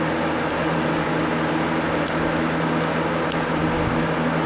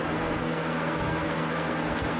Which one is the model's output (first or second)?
second